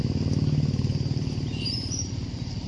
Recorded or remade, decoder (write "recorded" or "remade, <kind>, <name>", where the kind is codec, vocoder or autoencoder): recorded